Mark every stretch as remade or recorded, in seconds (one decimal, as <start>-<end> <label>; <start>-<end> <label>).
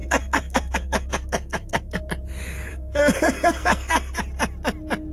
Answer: 0.0-2.0 remade; 2.0-2.7 recorded; 2.7-4.2 remade; 4.2-5.1 recorded